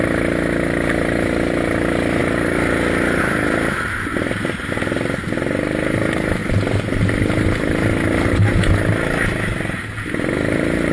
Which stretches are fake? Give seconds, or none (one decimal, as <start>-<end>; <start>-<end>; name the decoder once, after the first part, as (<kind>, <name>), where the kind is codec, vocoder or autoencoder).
none